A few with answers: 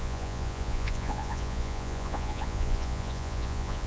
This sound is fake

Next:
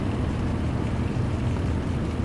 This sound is real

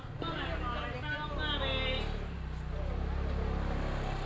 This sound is real